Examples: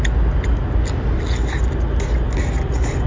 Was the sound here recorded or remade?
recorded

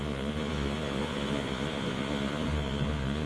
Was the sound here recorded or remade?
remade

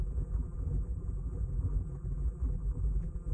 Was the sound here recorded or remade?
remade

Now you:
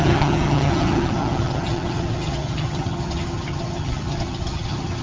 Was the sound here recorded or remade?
remade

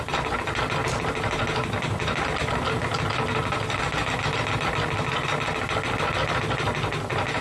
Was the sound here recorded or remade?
recorded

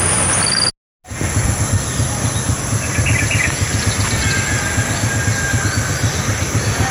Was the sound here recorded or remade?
recorded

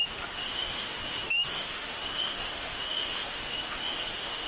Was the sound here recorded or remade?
remade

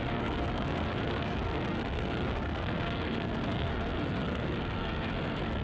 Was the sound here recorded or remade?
remade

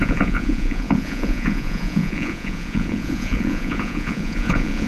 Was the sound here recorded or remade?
remade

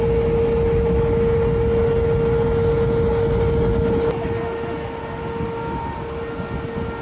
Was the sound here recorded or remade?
recorded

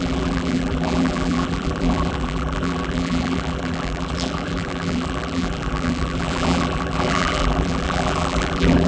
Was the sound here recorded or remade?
remade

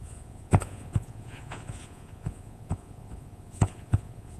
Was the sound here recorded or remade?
remade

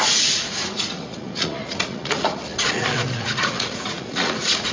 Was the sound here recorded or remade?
remade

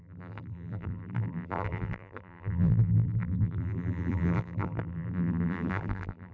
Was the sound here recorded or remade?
remade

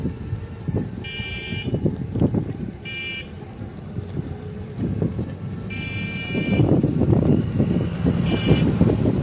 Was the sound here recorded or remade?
remade